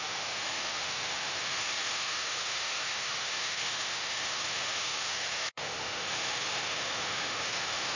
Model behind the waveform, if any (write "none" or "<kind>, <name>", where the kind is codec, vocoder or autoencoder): autoencoder, DAC-VAE